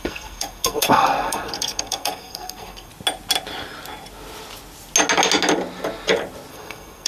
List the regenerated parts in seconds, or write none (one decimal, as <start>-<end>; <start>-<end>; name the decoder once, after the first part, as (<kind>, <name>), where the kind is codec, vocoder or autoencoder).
0.0-2.9 (codec, SNAC); 6.5-7.1